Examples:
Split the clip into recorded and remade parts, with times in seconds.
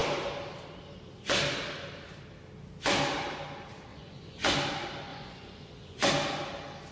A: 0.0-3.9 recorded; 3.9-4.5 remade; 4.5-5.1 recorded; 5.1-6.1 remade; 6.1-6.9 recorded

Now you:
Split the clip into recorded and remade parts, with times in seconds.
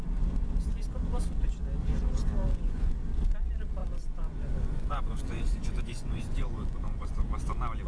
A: 0.0-2.4 recorded; 2.4-2.9 remade; 2.9-3.8 recorded; 3.8-7.2 remade; 7.2-7.9 recorded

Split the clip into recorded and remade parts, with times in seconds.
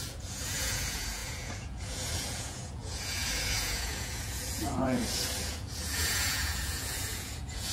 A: 0.0-7.7 remade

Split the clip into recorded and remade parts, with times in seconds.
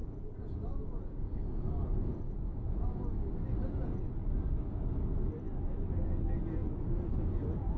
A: 0.0-3.1 remade; 3.1-6.6 recorded; 6.6-7.8 remade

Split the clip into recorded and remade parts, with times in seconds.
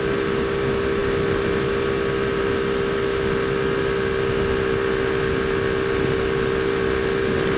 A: 0.0-7.6 recorded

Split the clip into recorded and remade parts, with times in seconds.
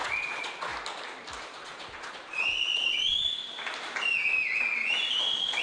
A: 0.0-0.7 remade; 0.7-1.4 recorded; 1.4-3.4 remade; 3.4-5.1 recorded; 5.1-5.6 remade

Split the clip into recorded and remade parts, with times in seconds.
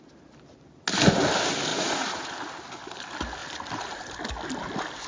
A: 0.0-1.7 recorded; 1.7-2.3 remade; 2.3-5.1 recorded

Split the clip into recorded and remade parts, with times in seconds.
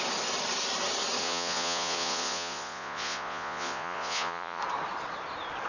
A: 0.0-1.2 recorded; 1.2-4.6 remade; 4.6-5.7 recorded